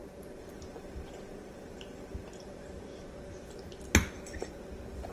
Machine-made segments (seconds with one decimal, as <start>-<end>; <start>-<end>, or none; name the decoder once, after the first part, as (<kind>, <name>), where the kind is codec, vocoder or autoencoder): 0.0-3.1 (vocoder, BigVGAN v2)